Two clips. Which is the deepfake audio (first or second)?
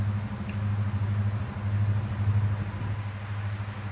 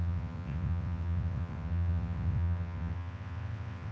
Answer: second